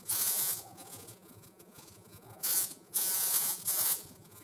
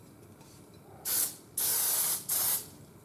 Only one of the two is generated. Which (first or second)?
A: first